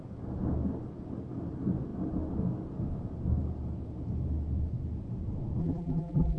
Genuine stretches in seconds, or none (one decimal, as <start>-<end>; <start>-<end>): 0.0-5.6